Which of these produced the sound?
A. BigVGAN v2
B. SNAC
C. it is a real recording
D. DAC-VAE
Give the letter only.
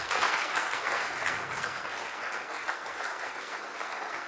B